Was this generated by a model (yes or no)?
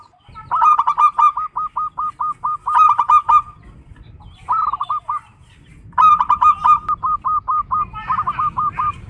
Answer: no